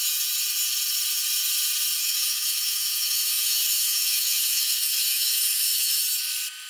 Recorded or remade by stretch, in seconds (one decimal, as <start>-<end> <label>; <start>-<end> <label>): 0.0-2.0 recorded; 2.0-6.0 remade; 6.0-6.7 recorded